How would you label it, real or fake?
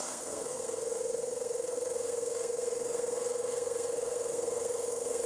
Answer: fake